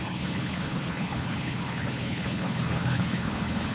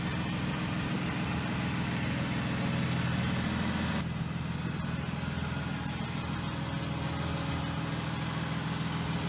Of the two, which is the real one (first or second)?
second